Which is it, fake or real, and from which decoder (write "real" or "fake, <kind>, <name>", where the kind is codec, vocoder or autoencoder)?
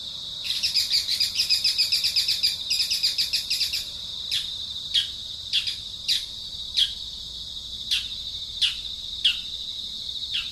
real